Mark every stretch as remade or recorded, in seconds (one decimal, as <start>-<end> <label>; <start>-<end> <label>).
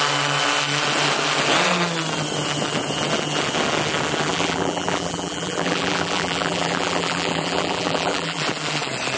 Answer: 0.0-4.3 recorded; 4.3-8.4 remade; 8.4-9.2 recorded